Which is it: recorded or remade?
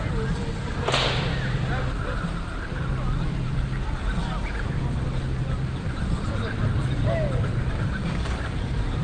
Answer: recorded